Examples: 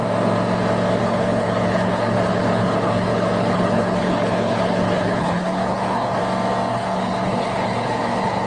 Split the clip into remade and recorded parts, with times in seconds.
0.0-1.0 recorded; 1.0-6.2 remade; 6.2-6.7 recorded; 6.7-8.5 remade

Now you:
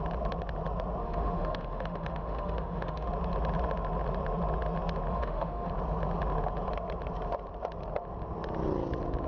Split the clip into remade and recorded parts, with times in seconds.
0.0-1.0 recorded; 1.0-3.1 remade; 3.1-5.1 recorded; 5.1-5.7 remade; 5.7-9.3 recorded